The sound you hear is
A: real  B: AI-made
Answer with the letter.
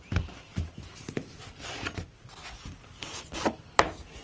A